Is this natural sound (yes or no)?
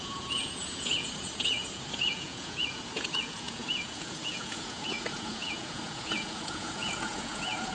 no